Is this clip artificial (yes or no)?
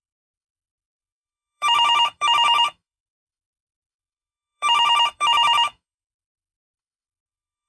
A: yes